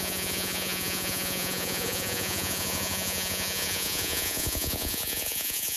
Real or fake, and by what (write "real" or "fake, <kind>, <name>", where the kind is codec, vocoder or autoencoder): fake, vocoder, Vocos